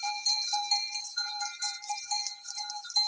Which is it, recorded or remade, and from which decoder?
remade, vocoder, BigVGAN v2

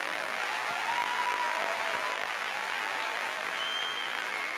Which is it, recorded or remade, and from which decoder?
remade, vocoder, BigVGAN v2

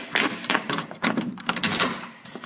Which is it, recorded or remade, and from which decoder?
remade, vocoder, BigVGAN v2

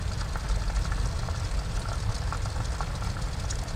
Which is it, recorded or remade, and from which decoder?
recorded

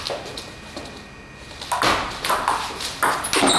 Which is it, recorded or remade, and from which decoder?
recorded